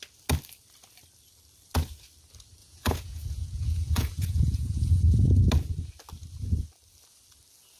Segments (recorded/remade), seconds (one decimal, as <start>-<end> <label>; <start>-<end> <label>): 0.0-2.6 recorded; 2.6-5.4 remade; 5.4-7.8 recorded